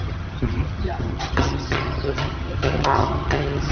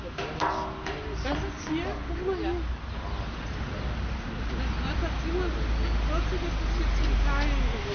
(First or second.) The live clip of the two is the second